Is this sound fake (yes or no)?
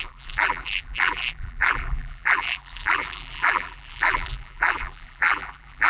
yes